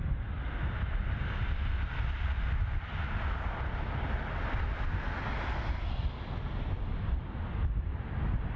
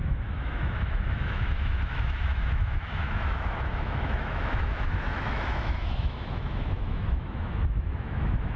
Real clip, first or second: first